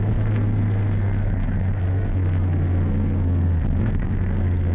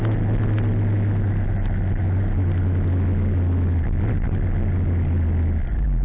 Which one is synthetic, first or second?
first